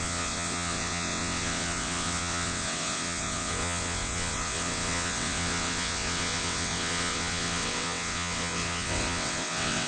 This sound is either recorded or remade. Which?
remade